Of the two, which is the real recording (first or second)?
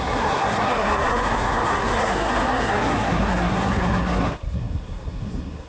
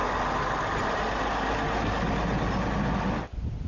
second